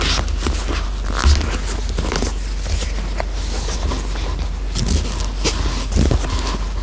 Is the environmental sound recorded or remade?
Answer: recorded